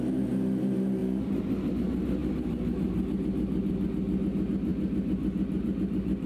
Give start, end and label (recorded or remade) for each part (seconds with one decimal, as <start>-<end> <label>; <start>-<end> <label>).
0.0-6.3 recorded